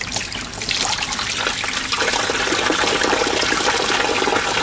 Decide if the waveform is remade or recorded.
recorded